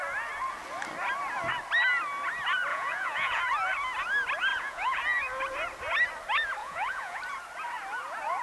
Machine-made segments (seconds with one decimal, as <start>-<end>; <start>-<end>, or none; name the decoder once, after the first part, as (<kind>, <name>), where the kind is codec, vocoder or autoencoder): 2.7-3.4 (vocoder, Vocos); 4.5-5.0; 6.6-7.2